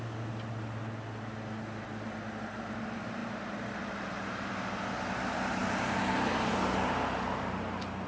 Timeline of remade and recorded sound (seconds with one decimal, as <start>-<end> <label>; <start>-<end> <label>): 0.0-8.1 recorded